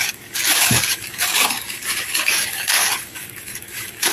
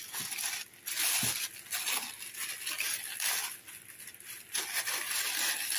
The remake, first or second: first